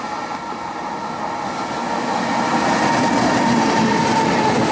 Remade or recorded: recorded